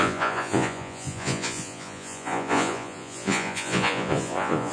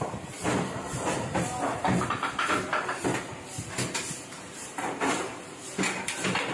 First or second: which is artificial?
first